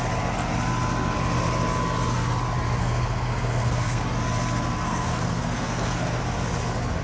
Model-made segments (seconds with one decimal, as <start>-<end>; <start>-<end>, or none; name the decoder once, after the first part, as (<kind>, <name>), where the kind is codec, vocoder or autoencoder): 2.8-4.0 (codec, SNAC); 4.8-6.2